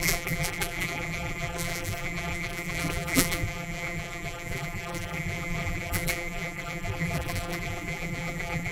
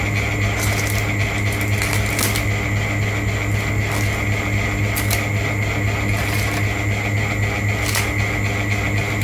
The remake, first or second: first